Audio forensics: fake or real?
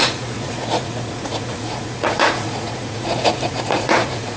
fake